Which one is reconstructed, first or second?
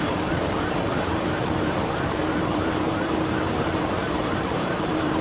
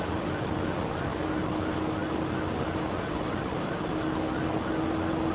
first